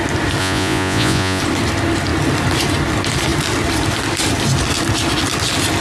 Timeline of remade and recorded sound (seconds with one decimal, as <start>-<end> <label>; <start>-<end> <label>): 0.0-0.4 recorded; 0.4-1.4 remade; 1.4-5.8 recorded